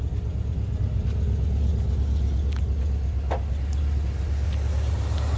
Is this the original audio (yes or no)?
yes